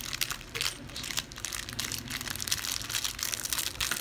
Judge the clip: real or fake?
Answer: real